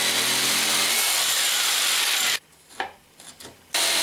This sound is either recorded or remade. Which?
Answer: recorded